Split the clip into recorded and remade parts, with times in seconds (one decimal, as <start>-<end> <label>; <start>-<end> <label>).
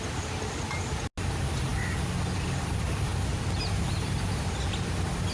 0.0-5.3 recorded